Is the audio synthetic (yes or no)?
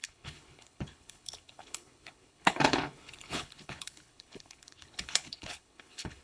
yes